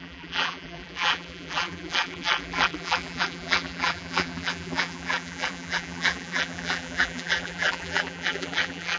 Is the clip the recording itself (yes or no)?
no